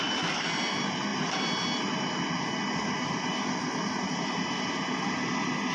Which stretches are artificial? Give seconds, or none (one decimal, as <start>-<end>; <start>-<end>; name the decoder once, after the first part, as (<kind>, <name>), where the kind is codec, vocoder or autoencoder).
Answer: none